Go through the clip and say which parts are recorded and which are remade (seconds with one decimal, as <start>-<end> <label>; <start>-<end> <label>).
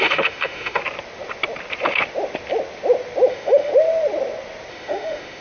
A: 0.0-0.8 remade; 0.8-3.3 recorded; 3.3-3.7 remade; 3.7-4.7 recorded; 4.7-5.4 remade